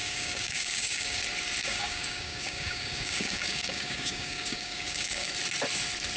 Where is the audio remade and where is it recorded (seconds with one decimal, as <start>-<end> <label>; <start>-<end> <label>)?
0.0-1.2 remade; 1.2-1.6 recorded; 1.6-5.3 remade; 5.3-6.2 recorded